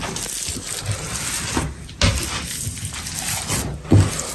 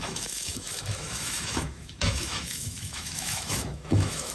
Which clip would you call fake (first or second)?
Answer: second